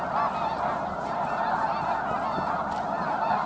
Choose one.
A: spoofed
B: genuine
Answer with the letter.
B